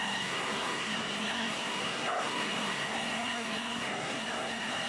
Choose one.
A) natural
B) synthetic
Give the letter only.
B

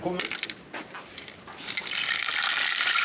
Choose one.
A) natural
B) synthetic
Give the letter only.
A